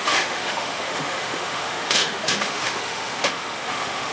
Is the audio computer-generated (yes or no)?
yes